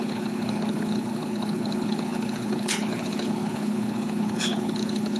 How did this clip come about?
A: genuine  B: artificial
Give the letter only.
B